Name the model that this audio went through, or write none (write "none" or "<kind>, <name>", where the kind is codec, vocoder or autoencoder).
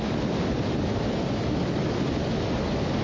none